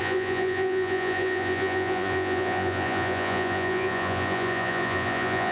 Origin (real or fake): fake